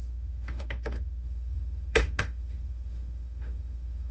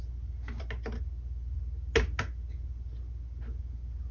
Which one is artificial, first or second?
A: first